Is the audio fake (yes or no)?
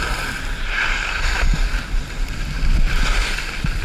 yes